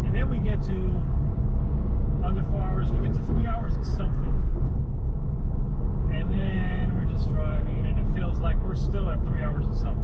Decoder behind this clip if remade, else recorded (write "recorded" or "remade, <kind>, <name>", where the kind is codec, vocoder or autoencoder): remade, codec, DAC